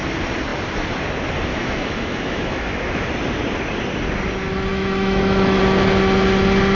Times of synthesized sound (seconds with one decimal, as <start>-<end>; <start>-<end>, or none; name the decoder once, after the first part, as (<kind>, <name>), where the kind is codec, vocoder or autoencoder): 1.5-3.1 (autoencoder, DAC-VAE); 4.7-5.6